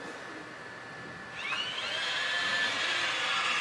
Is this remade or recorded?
recorded